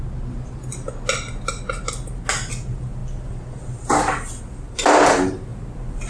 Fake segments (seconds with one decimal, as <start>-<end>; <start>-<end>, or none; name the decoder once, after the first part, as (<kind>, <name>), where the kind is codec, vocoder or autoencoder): none